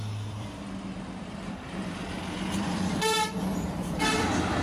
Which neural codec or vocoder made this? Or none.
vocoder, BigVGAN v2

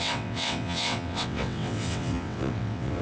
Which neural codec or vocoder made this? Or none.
vocoder, WaveNeXt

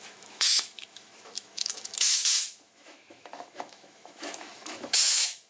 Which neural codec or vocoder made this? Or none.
autoencoder, DAC-VAE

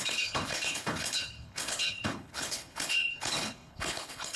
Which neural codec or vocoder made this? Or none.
codec, HILCodec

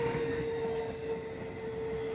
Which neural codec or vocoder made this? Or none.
none